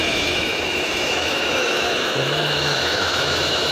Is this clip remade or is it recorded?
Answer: remade